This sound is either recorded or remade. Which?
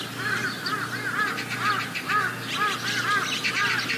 recorded